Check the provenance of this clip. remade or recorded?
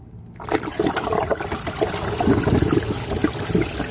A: recorded